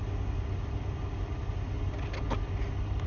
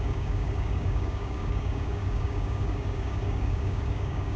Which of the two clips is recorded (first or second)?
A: first